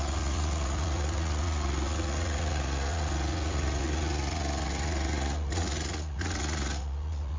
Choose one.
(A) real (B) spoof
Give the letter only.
B